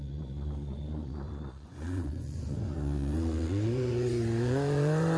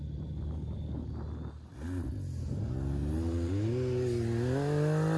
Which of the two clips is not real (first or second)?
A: first